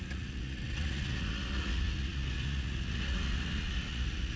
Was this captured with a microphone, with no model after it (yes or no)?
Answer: no